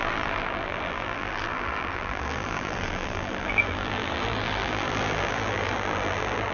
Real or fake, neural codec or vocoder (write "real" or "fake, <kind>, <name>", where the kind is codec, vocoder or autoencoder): fake, vocoder, BigVGAN v2